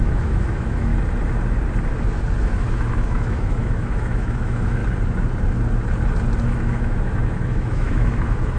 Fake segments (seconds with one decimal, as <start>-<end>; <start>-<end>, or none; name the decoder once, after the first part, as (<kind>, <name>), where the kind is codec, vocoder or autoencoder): 0.0-0.9 (autoencoder, DAC-VAE); 2.4-4.8; 6.4-8.6

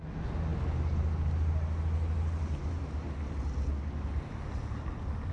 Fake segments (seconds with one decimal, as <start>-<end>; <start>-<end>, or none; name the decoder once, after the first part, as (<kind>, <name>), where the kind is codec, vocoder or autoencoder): none

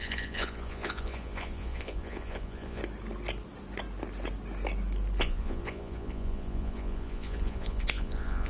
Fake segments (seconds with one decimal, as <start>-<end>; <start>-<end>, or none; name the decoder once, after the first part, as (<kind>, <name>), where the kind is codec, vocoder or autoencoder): 0.0-2.8 (vocoder, Vocos); 5.2-8.5

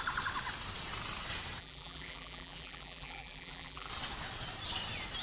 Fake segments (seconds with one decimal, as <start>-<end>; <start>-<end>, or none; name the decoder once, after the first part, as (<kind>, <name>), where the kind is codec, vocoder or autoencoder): 1.6-3.9 (vocoder, BigVGAN v2)

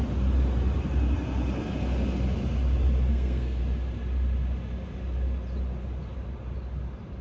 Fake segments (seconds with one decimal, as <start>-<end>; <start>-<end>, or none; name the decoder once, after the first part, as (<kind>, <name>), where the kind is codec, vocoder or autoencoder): 3.1-3.6 (codec, SNAC)

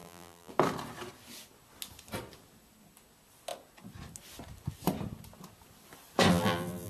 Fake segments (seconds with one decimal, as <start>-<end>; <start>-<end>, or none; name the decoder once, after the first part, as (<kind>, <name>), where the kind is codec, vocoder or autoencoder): 0.0-0.5 (vocoder, BigVGAN v2); 6.3-6.9